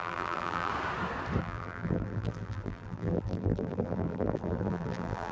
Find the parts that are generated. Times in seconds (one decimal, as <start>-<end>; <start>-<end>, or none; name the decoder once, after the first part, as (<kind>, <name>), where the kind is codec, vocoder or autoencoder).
0.0-0.7 (vocoder, BigVGAN v2); 1.4-5.3

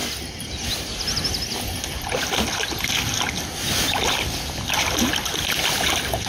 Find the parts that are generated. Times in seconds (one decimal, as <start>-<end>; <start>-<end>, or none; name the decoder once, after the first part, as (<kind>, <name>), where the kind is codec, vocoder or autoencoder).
none

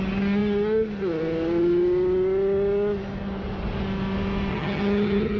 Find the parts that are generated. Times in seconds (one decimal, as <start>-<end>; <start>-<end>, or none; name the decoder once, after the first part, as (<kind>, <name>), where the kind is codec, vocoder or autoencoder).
4.5-5.4 (vocoder, HiFi-GAN)

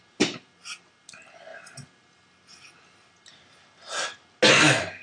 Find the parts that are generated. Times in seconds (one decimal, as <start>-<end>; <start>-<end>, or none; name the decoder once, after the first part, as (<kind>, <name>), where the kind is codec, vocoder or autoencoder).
none

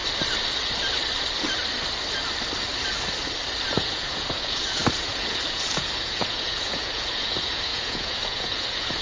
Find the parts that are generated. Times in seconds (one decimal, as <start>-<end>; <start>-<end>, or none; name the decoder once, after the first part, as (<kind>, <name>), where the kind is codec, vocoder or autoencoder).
3.7-9.0 (vocoder, Vocos)